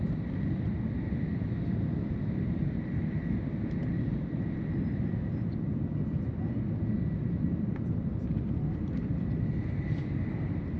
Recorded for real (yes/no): no